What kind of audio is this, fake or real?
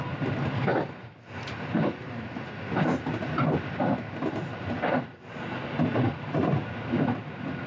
real